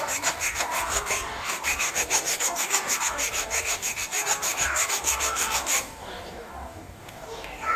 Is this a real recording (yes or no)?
no